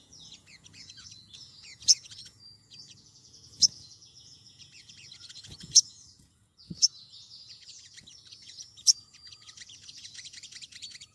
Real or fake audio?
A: fake